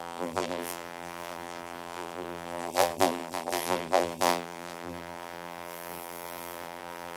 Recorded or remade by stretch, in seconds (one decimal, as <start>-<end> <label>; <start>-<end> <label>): 0.0-7.2 remade